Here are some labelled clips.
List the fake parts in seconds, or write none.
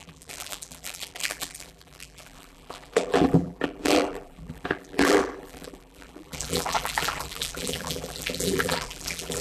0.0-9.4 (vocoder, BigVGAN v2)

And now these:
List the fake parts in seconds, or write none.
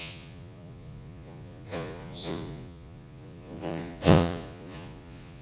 0.0-5.4 (vocoder, Vocos)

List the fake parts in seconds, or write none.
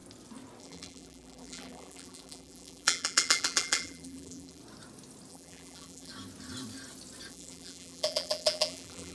0.6-4.6 (vocoder, BigVGAN v2); 5.3-6.1; 7.3-9.1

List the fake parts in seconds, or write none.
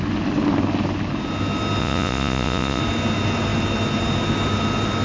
1.8-2.8 (vocoder, Vocos)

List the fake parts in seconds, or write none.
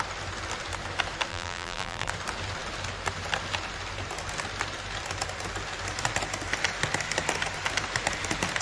1.3-2.1 (vocoder, BigVGAN v2)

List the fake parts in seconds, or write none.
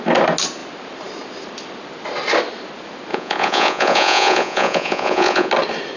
3.1-5.5 (vocoder, Vocos)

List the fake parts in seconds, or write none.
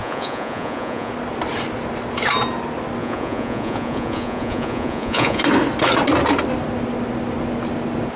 0.0-1.1 (vocoder, Vocos); 3.0-5.4